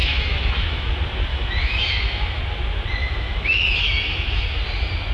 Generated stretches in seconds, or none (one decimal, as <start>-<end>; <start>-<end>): 0.0-0.9; 1.3-2.4; 3.0-4.4